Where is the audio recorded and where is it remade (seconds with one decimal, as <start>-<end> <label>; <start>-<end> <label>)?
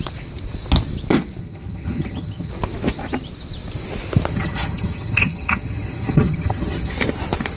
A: 0.0-1.4 recorded; 1.4-2.5 remade; 2.5-4.3 recorded; 4.3-6.9 remade; 6.9-7.6 recorded